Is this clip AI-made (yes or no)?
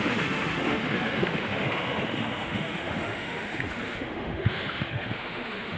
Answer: yes